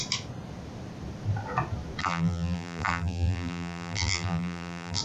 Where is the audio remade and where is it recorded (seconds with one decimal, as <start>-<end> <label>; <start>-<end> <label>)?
0.0-2.0 recorded; 2.0-5.0 remade